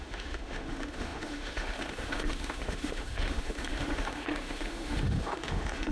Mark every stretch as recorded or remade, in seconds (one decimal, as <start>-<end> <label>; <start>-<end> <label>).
0.0-5.9 remade